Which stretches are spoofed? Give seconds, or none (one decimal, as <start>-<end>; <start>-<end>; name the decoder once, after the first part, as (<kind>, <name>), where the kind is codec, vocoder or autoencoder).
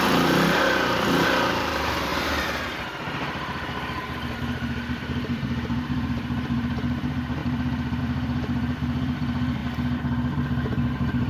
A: 0.0-9.6 (vocoder, BigVGAN v2); 10.9-11.3